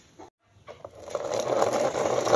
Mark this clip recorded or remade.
recorded